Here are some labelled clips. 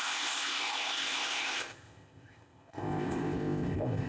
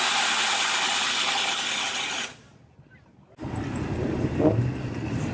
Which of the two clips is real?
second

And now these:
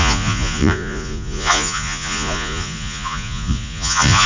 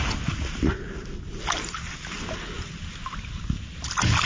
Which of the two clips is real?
second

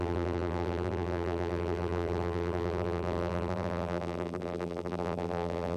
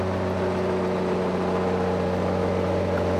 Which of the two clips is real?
second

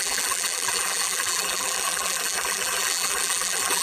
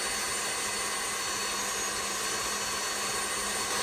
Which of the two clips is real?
second